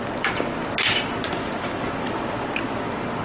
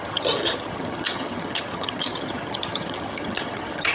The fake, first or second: second